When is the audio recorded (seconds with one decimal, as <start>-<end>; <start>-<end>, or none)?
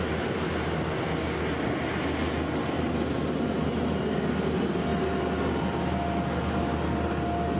0.0-7.6